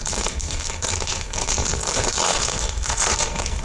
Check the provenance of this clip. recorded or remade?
remade